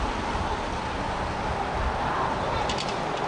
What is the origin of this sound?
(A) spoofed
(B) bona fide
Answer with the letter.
B